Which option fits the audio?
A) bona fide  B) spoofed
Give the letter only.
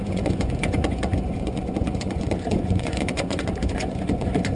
B